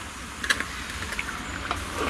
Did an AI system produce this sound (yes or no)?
no